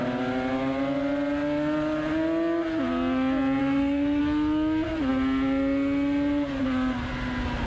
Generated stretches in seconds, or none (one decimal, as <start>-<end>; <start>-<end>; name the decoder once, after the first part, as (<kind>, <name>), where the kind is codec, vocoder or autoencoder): 3.6-4.2 (codec, SNAC)